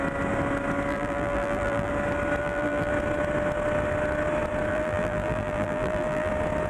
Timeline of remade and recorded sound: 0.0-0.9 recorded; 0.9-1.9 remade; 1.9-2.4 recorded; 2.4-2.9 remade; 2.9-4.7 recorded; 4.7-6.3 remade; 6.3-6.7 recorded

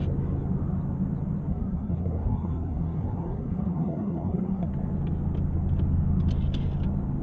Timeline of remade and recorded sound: 0.0-1.5 recorded; 1.5-4.7 remade; 4.7-7.2 recorded

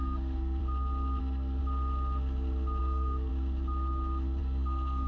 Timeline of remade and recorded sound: 0.0-0.6 remade; 0.6-1.2 recorded; 1.2-1.6 remade; 1.6-2.8 recorded; 2.8-3.3 remade; 3.3-4.4 recorded; 4.4-5.1 remade